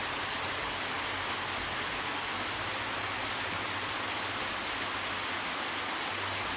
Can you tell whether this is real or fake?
real